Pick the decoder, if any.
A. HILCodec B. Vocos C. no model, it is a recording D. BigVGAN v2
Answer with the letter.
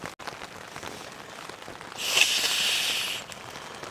C